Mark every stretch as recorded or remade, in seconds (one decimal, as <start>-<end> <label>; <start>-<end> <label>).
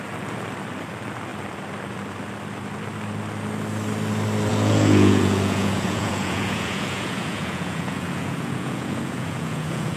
0.0-4.5 recorded; 4.5-10.0 remade